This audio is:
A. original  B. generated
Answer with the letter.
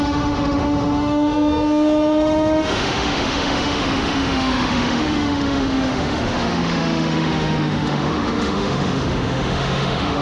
B